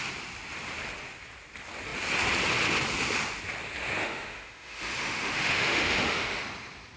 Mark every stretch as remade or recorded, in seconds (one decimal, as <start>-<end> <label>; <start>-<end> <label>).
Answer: 0.0-4.0 recorded; 4.0-6.4 remade; 6.4-7.0 recorded